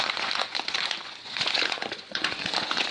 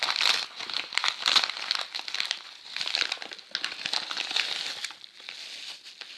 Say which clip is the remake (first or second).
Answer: first